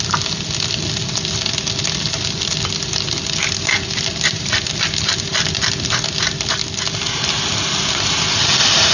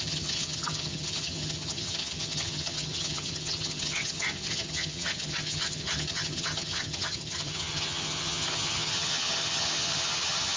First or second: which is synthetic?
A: second